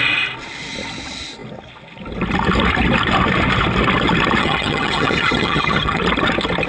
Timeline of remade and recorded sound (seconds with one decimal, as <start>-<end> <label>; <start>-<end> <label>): 0.0-4.4 recorded; 4.4-6.0 remade; 6.0-6.7 recorded